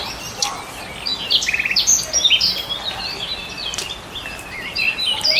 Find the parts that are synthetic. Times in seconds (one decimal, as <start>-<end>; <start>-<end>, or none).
none

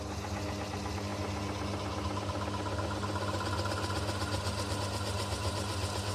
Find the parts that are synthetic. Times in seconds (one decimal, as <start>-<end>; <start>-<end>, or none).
none

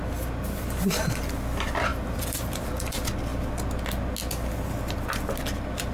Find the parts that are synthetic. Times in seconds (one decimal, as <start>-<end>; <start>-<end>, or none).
1.9-2.7

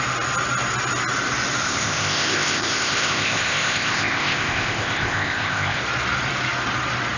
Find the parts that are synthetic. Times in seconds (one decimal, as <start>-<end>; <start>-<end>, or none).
1.6-5.8